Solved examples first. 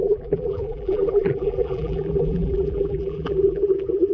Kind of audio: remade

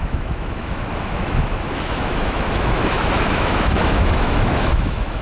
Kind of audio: remade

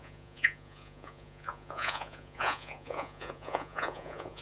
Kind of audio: remade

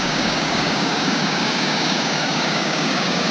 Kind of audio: remade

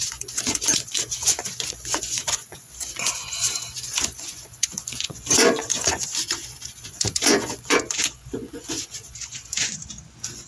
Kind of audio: remade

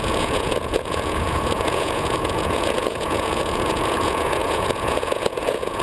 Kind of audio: remade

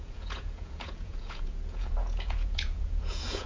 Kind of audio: remade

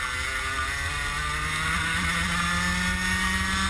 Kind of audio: recorded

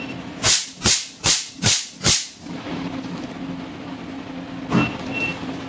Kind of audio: recorded